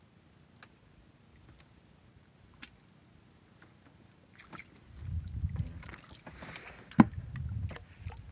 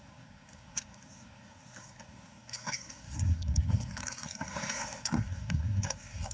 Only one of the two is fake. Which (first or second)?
second